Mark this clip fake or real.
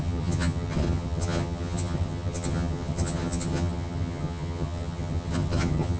fake